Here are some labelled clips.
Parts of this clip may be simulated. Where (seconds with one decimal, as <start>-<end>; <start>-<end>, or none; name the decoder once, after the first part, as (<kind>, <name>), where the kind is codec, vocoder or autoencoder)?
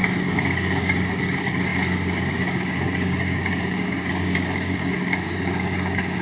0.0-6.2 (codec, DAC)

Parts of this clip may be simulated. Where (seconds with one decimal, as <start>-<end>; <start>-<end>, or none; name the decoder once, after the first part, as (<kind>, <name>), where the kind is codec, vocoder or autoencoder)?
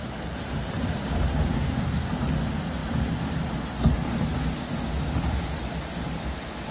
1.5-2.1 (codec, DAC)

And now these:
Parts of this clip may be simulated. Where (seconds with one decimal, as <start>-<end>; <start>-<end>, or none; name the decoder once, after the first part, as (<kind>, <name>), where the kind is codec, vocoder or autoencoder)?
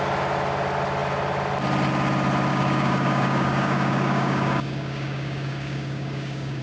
2.5-6.6 (codec, DAC)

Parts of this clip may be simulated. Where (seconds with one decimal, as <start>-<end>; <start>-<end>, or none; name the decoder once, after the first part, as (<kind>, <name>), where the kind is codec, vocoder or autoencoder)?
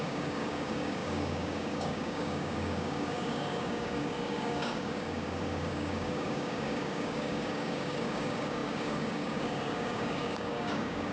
0.0-11.1 (codec, DAC)